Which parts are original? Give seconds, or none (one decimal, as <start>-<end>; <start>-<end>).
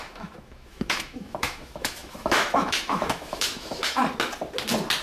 4.0-5.0